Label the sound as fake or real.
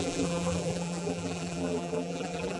fake